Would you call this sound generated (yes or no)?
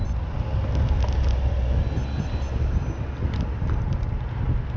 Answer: no